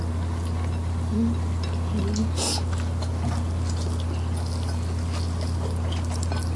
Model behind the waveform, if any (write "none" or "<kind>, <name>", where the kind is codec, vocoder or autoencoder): none